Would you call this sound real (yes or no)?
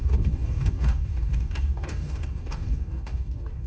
no